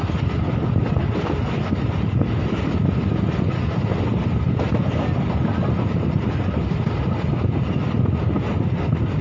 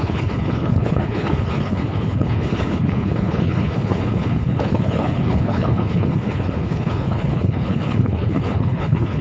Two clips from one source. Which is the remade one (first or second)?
second